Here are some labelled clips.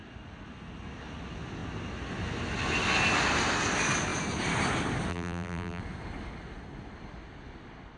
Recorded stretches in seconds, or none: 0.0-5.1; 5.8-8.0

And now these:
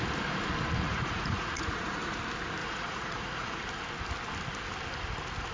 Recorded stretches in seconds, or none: 0.0-0.9; 2.2-2.6; 3.6-5.5